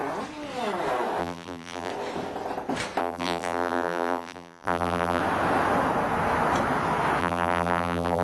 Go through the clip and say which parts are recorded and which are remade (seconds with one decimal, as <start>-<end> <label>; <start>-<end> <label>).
0.0-1.2 recorded; 1.2-1.9 remade; 1.9-3.0 recorded; 3.0-5.2 remade; 5.2-7.2 recorded; 7.2-8.2 remade

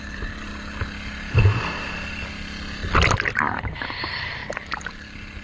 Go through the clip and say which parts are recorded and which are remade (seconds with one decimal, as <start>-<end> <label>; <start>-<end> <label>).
0.0-0.5 remade; 0.5-3.3 recorded; 3.3-4.4 remade; 4.4-4.9 recorded; 4.9-5.4 remade

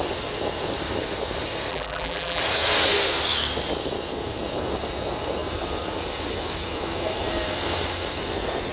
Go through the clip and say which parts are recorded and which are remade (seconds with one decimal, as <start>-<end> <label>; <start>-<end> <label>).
0.0-1.7 recorded; 1.7-2.4 remade; 2.4-8.7 recorded

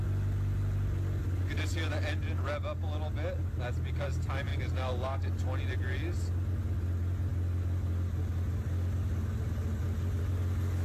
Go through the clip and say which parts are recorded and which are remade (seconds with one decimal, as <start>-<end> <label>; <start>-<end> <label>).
0.0-10.8 recorded

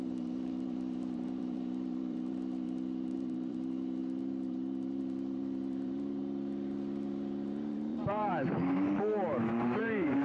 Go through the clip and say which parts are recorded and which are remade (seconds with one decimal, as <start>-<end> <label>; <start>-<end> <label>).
0.0-10.2 remade

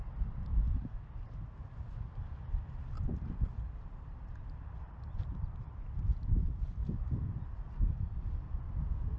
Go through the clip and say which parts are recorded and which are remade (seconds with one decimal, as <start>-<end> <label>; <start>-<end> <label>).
0.0-0.5 recorded; 0.5-5.4 remade; 5.4-6.8 recorded; 6.8-7.8 remade; 7.8-9.2 recorded

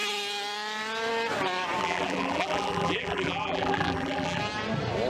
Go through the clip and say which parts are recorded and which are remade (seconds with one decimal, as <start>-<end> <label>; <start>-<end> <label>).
0.0-1.8 recorded; 1.8-4.4 remade; 4.4-5.1 recorded